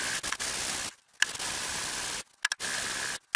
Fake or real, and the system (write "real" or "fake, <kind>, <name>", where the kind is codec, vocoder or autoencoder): real